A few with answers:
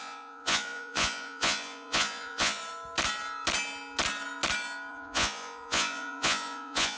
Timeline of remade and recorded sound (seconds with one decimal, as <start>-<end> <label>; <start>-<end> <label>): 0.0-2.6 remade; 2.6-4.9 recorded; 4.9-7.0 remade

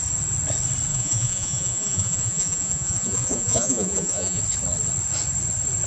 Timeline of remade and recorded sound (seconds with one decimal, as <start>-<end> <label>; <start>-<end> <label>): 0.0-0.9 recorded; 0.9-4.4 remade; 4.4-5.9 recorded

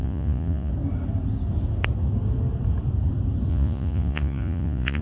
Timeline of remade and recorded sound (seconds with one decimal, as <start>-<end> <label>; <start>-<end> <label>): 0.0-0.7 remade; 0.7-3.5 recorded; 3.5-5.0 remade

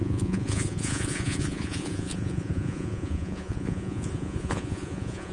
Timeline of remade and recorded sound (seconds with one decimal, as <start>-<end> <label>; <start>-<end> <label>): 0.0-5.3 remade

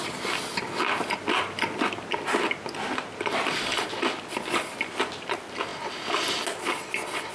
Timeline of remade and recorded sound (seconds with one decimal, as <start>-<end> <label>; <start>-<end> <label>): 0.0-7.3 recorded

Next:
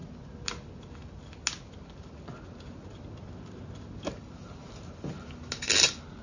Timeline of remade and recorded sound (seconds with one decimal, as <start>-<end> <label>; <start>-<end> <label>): 0.0-6.2 recorded

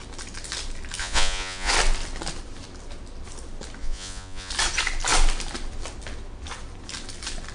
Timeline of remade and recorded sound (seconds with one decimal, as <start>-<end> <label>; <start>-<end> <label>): 0.0-1.0 recorded; 1.0-1.7 remade; 1.7-3.8 recorded; 3.8-4.5 remade; 4.5-7.5 recorded